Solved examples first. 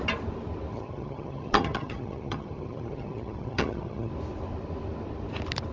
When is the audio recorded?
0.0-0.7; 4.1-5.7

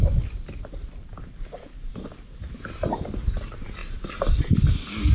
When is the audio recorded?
0.0-5.1

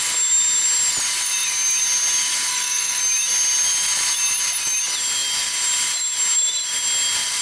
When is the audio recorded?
0.0-2.5; 3.0-7.4

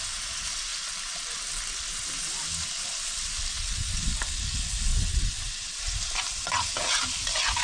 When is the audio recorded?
0.0-3.5; 4.0-4.9; 5.8-7.6

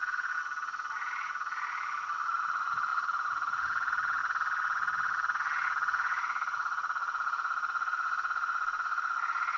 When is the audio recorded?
0.0-2.9; 4.2-9.6

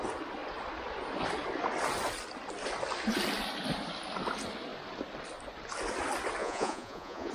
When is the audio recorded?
0.0-6.4

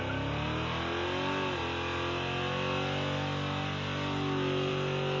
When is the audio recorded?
0.0-5.2